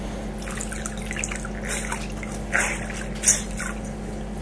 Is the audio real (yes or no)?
yes